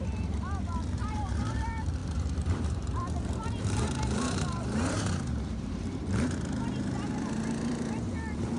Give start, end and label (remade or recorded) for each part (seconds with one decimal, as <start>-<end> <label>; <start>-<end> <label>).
0.0-8.6 remade